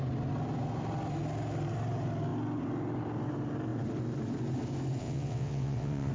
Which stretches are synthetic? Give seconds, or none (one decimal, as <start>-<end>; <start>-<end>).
5.0-6.1